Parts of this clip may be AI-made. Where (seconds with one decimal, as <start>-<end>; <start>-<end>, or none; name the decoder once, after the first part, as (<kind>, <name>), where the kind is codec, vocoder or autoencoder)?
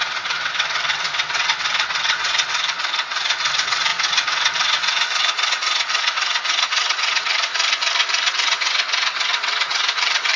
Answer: 0.0-7.5 (vocoder, WaveNeXt); 8.3-10.4